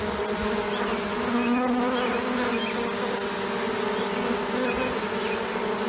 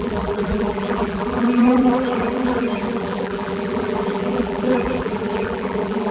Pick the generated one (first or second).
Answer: second